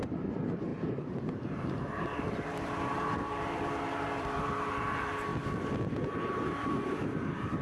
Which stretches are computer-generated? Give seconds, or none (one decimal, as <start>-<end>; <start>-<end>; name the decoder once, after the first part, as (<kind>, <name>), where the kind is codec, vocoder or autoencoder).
0.0-5.3 (vocoder, BigVGAN v2); 6.1-7.6